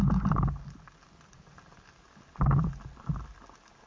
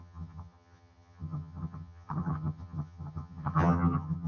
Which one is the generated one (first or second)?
second